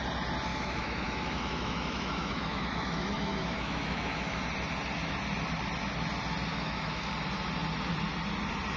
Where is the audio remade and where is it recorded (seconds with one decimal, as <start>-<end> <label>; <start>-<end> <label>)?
0.0-0.5 recorded; 0.5-4.4 remade; 4.4-6.5 recorded; 6.5-7.1 remade; 7.1-8.8 recorded